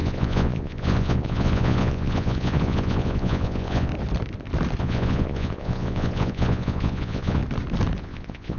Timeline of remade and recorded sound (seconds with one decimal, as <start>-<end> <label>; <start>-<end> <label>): 0.0-3.9 remade; 3.9-4.8 recorded; 4.8-7.4 remade; 7.4-8.0 recorded; 8.0-8.6 remade